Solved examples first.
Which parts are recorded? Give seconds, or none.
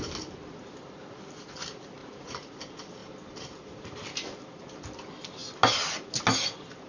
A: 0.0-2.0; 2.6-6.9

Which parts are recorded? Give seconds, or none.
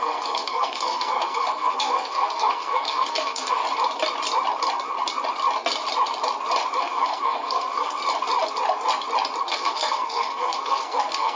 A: 3.6-6.8; 8.0-9.4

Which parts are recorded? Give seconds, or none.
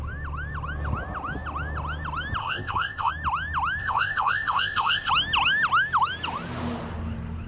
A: 0.0-2.4; 3.1-3.8; 5.1-7.5